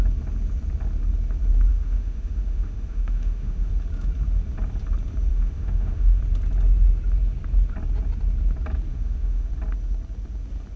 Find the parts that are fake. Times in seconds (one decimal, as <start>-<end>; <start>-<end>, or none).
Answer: 1.7-3.7; 5.3-6.2; 8.9-9.5